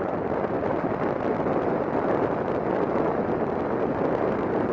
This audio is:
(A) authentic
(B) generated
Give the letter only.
A